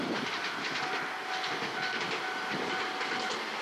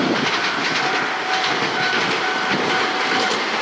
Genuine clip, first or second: first